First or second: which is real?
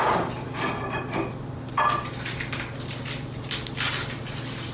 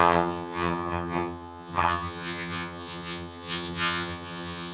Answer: first